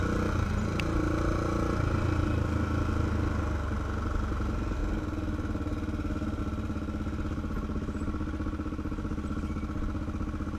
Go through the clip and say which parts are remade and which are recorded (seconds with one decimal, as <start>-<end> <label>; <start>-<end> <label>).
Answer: 0.0-10.6 recorded